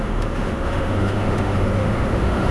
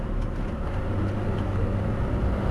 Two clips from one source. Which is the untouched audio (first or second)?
second